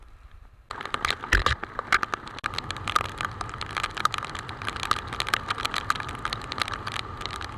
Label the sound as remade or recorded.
recorded